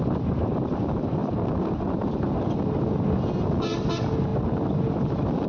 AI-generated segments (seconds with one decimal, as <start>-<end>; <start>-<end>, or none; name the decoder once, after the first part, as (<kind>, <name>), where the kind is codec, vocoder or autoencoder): none